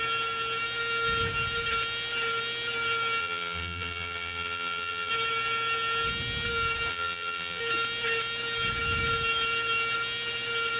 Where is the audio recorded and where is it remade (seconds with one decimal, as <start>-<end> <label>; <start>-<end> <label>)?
0.0-3.2 recorded; 3.2-5.1 remade; 5.1-6.9 recorded; 6.9-7.6 remade; 7.6-10.8 recorded